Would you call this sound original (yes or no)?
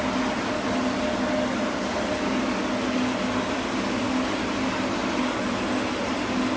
yes